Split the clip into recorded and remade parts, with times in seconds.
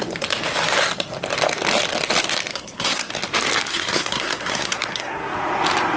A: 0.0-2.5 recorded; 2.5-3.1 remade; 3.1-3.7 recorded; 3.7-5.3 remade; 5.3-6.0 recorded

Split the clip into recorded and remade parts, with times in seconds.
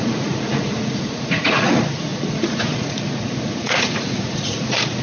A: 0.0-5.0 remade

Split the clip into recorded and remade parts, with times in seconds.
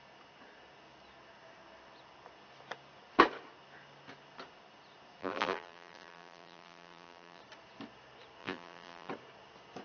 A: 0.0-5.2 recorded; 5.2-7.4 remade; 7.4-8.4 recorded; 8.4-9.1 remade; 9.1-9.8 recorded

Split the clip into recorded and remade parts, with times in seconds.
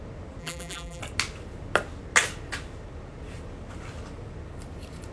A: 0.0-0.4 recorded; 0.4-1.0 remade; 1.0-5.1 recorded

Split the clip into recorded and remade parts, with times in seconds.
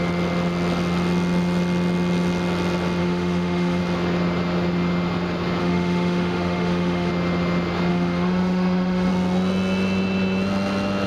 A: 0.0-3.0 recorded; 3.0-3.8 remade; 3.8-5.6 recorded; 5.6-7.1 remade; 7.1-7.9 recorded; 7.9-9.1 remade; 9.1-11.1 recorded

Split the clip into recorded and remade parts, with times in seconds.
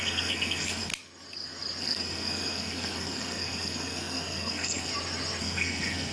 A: 0.0-0.9 remade; 0.9-1.8 recorded; 1.8-4.9 remade; 4.9-5.4 recorded; 5.4-6.1 remade